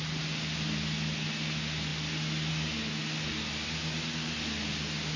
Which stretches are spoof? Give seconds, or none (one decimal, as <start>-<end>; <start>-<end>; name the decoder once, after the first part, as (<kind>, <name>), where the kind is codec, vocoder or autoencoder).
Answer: none